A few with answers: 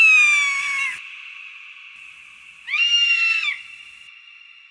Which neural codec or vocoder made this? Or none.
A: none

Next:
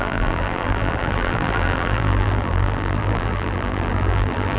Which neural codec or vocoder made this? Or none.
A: vocoder, BigVGAN v2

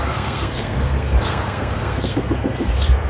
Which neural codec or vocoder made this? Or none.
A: codec, SNAC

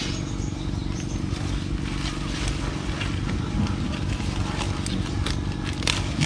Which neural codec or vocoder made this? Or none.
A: none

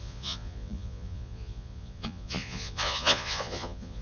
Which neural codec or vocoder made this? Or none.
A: vocoder, Vocos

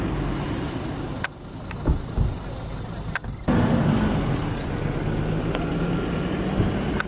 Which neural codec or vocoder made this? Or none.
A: none